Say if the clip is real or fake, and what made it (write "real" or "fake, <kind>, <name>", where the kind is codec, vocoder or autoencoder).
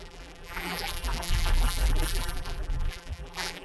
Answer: fake, vocoder, BigVGAN v2